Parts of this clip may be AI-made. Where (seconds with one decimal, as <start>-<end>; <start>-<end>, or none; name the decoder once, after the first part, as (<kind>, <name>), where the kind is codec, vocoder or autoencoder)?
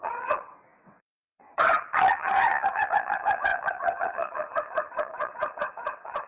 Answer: 0.0-6.3 (vocoder, WaveNeXt)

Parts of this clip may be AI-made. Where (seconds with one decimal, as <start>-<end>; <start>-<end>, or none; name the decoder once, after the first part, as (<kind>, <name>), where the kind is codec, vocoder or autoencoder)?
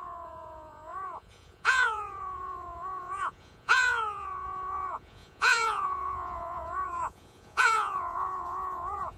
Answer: 0.0-9.2 (vocoder, Vocos)